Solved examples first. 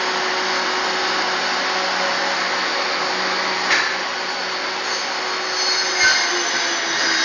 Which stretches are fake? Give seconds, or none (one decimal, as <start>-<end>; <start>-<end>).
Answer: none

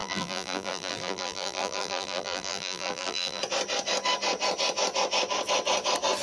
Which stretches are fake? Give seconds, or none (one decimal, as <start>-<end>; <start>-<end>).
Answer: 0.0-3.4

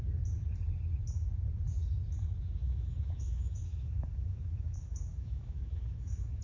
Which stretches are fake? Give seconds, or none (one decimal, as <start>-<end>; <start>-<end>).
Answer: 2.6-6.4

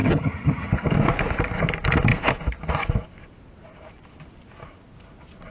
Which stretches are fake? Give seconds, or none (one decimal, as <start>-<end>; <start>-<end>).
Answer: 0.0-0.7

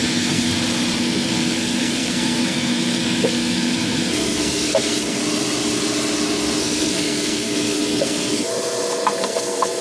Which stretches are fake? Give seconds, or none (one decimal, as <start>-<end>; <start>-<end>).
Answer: 0.0-0.5; 1.0-5.2; 6.6-8.5; 9.2-9.8

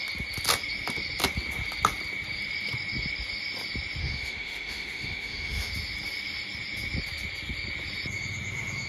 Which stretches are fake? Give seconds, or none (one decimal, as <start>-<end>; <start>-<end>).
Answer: 4.0-5.7

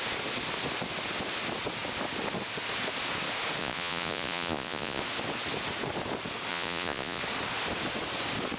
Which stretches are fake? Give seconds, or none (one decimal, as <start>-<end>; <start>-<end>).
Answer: 3.6-5.0; 6.5-7.2